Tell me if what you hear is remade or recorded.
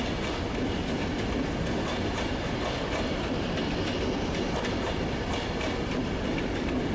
recorded